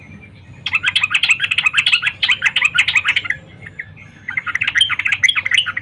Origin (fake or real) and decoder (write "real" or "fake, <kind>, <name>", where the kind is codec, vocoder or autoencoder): real